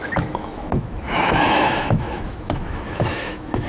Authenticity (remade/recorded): remade